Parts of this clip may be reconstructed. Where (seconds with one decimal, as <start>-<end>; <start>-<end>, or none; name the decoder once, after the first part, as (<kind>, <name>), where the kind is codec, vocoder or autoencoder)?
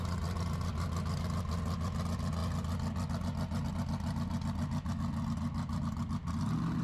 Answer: none